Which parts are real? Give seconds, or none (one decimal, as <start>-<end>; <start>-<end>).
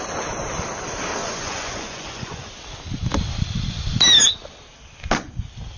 0.0-1.2; 2.5-5.8